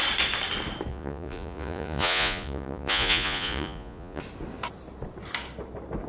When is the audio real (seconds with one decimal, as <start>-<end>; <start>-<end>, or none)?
0.0-0.9; 4.2-6.1